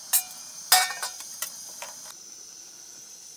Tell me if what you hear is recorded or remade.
recorded